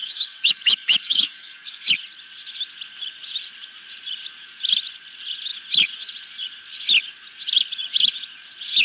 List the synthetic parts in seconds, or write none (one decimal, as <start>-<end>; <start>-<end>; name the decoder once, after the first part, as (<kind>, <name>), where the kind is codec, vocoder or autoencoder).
0.0-1.9 (codec, DAC)